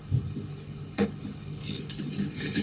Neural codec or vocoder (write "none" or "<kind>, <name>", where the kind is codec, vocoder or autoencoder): codec, HILCodec